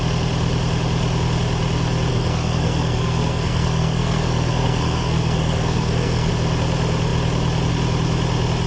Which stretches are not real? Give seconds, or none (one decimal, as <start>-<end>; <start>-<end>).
2.1-6.3